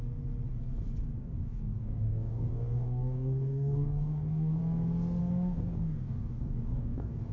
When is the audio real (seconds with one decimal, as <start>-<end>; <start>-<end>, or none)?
0.0-1.2; 4.6-5.2